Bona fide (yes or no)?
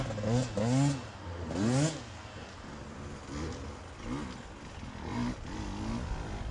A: yes